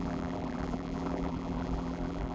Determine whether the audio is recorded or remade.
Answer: remade